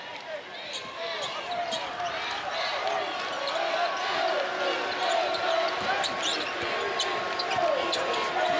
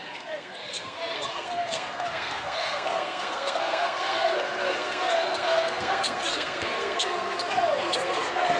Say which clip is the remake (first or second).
second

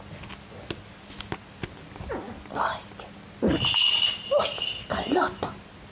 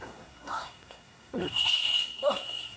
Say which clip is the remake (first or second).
second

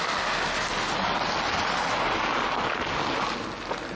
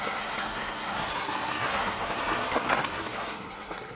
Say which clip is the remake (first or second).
second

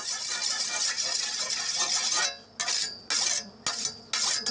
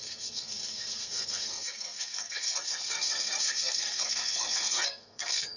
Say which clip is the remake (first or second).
second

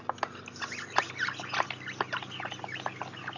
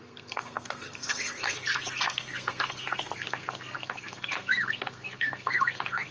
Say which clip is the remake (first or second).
second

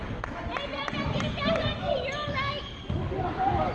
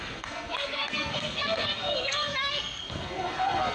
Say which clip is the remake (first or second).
second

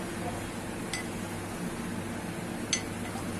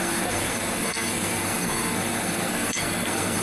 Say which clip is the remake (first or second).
second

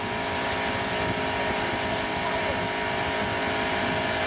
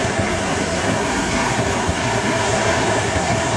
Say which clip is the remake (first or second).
second